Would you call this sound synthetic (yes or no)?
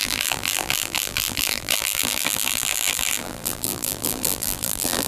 yes